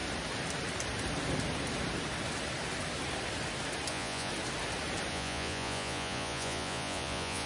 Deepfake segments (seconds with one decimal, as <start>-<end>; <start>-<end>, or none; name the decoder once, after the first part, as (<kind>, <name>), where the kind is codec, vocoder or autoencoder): 3.9-4.3 (vocoder, Vocos); 5.1-7.5